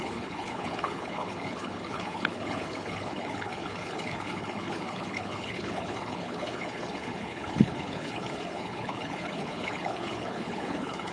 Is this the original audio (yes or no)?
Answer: no